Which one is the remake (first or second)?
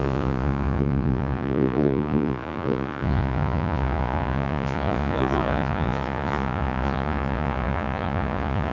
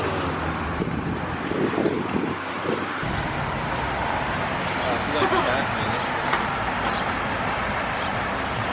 first